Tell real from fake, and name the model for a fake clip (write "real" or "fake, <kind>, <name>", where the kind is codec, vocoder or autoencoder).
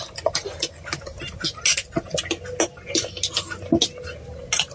real